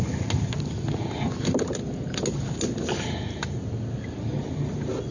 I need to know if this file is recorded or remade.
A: recorded